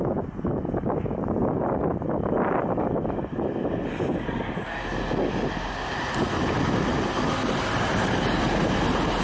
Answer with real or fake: real